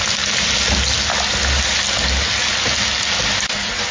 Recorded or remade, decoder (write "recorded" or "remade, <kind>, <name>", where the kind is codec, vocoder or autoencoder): recorded